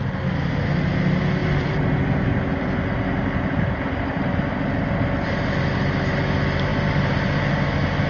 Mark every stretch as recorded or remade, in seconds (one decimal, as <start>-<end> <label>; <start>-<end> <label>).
0.0-1.4 recorded; 1.4-2.4 remade; 2.4-8.1 recorded